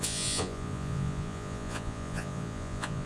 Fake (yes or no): yes